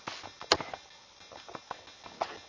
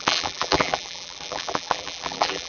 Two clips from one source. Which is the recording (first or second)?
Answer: first